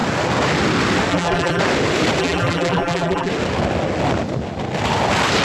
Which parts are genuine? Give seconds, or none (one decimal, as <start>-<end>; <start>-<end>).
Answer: 0.0-1.1; 1.6-2.2; 3.3-5.4